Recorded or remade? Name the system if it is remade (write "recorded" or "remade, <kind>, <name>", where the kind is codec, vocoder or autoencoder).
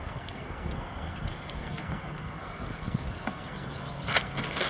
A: remade, codec, SNAC